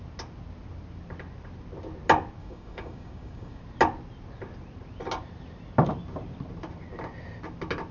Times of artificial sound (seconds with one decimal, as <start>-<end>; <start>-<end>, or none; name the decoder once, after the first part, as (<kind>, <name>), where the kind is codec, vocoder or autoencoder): 2.4-3.6 (codec, DAC)